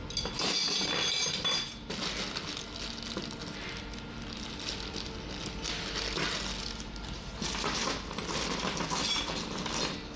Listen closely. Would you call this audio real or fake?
real